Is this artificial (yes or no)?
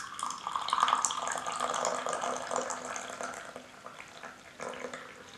no